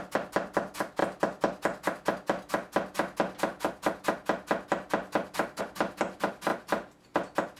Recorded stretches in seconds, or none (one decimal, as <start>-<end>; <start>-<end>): 1.0-5.6; 6.5-7.6